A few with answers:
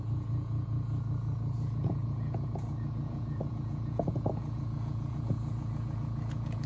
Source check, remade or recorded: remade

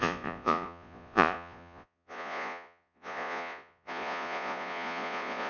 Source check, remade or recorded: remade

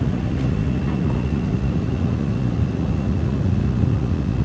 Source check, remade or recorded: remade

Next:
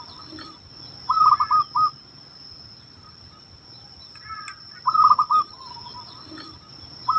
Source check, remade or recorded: recorded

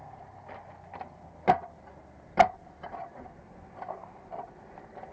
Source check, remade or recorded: recorded